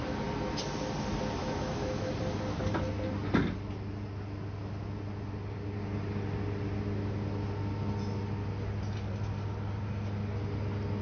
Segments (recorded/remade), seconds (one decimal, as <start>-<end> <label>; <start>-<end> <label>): 0.0-1.4 recorded; 1.4-2.1 remade; 2.1-11.0 recorded